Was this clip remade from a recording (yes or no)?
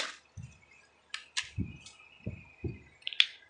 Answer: no